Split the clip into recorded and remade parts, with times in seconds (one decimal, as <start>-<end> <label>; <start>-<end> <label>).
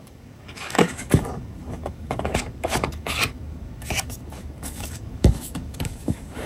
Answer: 0.0-6.5 remade